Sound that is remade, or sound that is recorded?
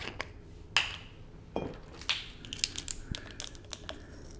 recorded